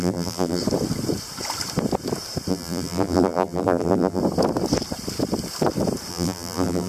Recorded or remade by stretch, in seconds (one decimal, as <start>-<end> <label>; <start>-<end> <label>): 0.0-0.6 remade; 0.6-2.5 recorded; 2.5-4.2 remade; 4.2-6.1 recorded; 6.1-6.9 remade